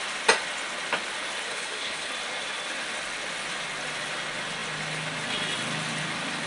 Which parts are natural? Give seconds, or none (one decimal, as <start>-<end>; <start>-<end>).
0.0-1.5; 2.1-6.5